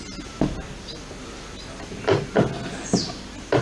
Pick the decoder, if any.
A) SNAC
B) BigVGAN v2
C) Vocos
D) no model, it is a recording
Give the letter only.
D